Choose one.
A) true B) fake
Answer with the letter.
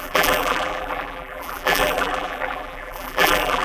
B